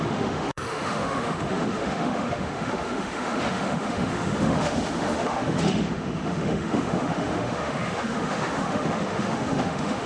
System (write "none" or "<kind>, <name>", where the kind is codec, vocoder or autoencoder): autoencoder, DAC-VAE